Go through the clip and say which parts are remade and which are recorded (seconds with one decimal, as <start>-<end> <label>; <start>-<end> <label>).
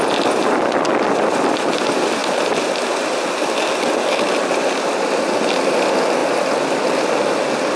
0.0-7.8 recorded